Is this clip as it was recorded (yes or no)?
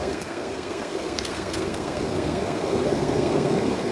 no